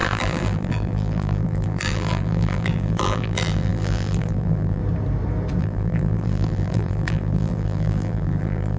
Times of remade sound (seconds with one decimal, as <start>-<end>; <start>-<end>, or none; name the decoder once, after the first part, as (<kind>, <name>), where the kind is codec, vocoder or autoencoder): 0.0-4.8 (vocoder, BigVGAN v2); 5.6-8.8